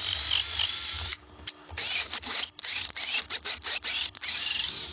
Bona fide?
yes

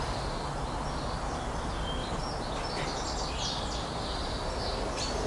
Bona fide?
yes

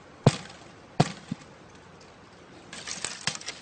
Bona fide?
yes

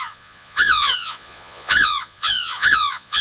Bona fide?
no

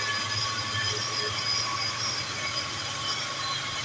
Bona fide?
yes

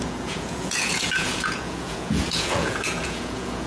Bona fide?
no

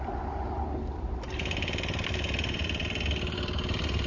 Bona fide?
yes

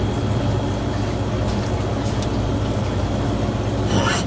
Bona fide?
yes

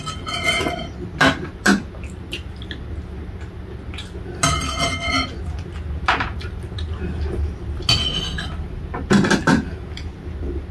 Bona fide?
yes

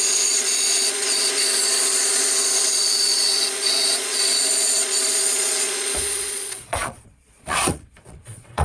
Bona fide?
no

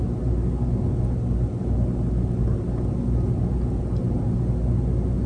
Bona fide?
yes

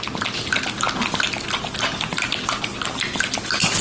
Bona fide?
yes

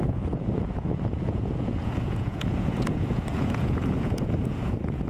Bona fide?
no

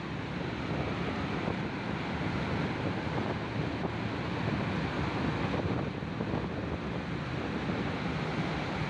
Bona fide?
yes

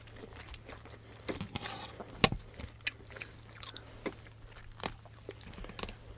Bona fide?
yes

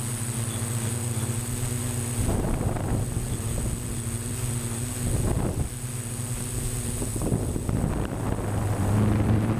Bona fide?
yes